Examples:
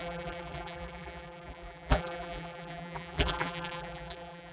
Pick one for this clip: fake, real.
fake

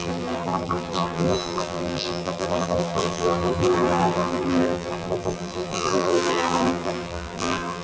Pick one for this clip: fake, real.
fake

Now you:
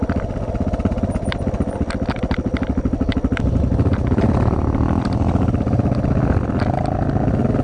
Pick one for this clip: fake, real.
real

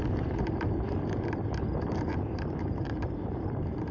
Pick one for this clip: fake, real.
fake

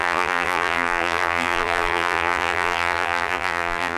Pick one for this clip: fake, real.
fake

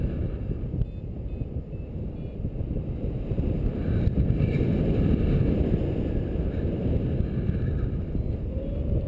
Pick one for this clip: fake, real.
real